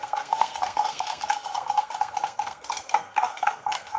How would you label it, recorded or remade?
remade